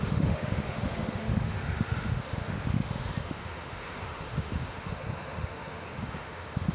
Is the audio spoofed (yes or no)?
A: yes